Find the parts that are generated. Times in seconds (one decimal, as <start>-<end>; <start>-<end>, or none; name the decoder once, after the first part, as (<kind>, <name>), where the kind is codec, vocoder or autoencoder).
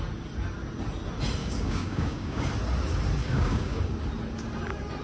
1.4-2.5 (codec, DAC); 3.2-3.8